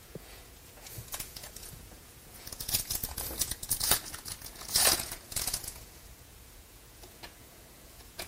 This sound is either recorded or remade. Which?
remade